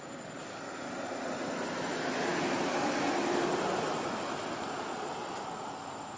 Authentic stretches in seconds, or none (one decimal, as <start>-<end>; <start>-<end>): 0.0-6.2